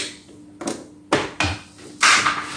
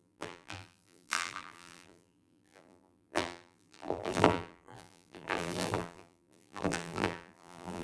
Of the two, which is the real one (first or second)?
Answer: first